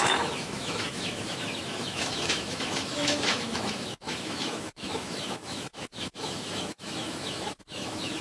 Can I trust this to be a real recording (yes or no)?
no